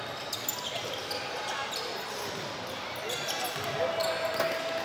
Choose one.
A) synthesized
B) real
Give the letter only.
B